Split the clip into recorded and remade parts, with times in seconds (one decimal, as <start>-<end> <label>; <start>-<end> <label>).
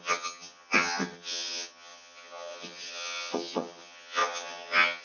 0.0-5.0 remade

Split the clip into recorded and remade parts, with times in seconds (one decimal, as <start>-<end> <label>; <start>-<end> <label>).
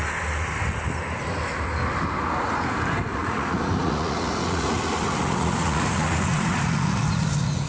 0.0-3.1 recorded; 3.1-7.7 remade